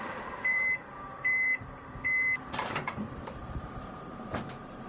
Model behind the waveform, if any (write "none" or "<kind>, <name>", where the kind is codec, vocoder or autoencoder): vocoder, BigVGAN v2